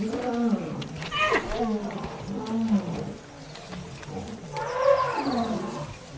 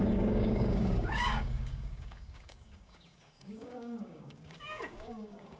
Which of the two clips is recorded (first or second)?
first